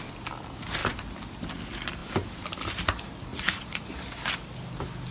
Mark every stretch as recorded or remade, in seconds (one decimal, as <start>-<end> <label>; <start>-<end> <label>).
0.0-3.3 recorded; 3.3-3.9 remade; 3.9-5.1 recorded